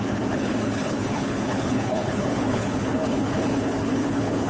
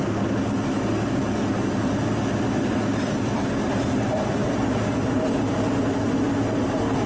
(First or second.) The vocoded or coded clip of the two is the first